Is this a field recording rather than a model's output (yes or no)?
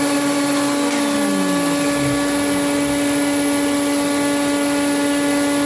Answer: yes